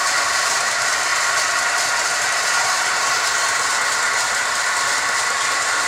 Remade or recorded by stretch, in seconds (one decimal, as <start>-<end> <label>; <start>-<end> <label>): 0.0-2.1 recorded; 2.1-3.2 remade; 3.2-5.9 recorded